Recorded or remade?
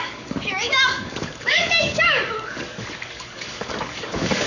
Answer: remade